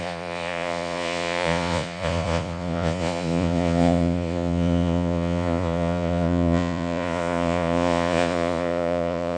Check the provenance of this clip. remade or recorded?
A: remade